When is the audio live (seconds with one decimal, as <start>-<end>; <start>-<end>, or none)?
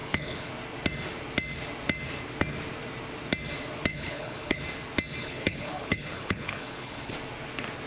0.5-3.9; 4.6-5.2; 7.1-7.9